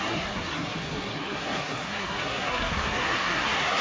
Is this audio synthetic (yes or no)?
yes